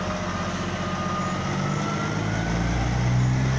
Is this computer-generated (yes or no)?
no